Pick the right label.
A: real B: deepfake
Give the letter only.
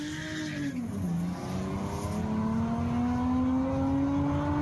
A